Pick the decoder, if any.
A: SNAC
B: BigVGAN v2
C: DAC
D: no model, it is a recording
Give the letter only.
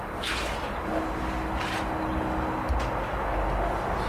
D